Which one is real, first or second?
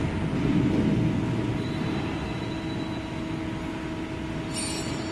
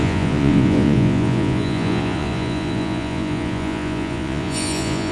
first